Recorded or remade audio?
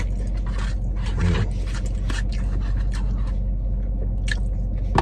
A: recorded